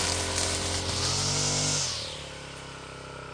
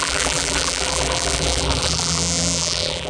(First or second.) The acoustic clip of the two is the first